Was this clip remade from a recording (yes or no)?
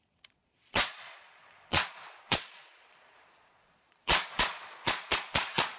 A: yes